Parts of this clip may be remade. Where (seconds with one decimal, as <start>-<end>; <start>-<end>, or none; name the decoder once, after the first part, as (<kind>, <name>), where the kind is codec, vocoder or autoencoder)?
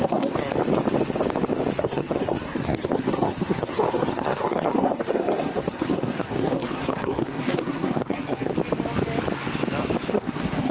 0.0-0.4 (codec, SNAC); 1.8-8.5; 10.1-10.7